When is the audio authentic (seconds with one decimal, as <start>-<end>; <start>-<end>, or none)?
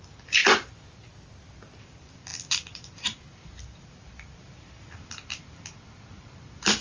0.4-1.8